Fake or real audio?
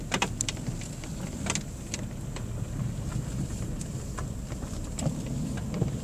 real